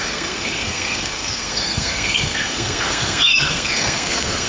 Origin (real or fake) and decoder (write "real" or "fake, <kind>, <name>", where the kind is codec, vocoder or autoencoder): fake, codec, SNAC